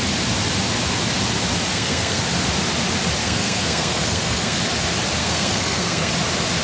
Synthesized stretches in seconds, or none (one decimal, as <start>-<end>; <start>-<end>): 1.7-2.2; 3.2-4.6; 5.2-6.1